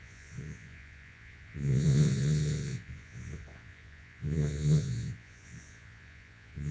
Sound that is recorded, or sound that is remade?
remade